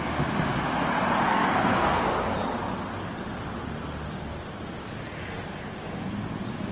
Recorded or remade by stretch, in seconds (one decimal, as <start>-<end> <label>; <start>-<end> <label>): 0.0-1.3 recorded; 1.3-2.0 remade; 2.0-6.7 recorded